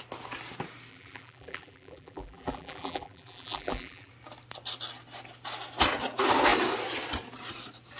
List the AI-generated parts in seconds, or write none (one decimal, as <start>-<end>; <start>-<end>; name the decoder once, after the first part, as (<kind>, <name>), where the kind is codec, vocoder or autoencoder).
0.9-4.1 (vocoder, BigVGAN v2)